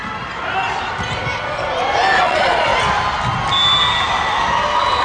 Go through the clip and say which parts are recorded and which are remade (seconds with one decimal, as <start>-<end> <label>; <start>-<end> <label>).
0.0-2.2 recorded; 2.2-2.7 remade; 2.7-5.0 recorded